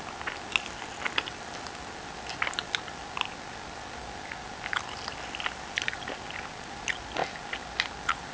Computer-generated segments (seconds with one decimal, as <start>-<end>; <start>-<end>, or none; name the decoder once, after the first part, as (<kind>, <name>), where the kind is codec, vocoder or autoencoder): none

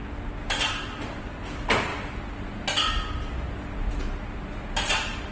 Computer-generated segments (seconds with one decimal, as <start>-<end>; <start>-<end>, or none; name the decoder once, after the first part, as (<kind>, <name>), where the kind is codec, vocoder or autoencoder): none

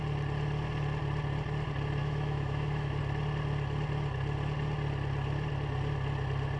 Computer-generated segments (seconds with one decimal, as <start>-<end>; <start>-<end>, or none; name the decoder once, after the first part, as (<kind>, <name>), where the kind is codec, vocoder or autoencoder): 2.0-3.0 (autoencoder, DAC-VAE)

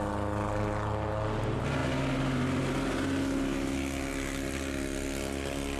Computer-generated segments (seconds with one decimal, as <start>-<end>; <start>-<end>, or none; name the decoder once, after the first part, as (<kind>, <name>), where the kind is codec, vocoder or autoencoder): none

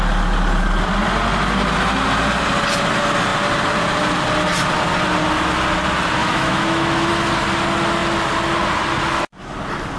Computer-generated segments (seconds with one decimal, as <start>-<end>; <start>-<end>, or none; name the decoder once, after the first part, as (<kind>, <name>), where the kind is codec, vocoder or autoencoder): 6.2-7.1 (autoencoder, DAC-VAE)

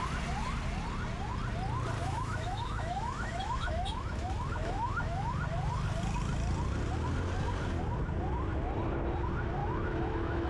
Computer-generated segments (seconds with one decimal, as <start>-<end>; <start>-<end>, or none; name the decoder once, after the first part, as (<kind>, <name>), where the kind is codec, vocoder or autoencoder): 2.0-5.3 (autoencoder, DAC-VAE); 9.6-10.5

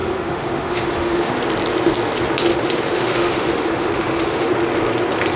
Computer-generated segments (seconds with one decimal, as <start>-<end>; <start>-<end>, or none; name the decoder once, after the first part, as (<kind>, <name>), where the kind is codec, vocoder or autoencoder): 0.0-1.3 (autoencoder, DAC-VAE); 2.5-4.5